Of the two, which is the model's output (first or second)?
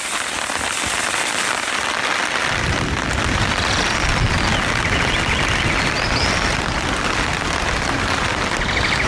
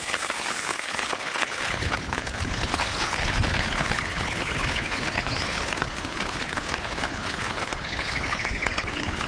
second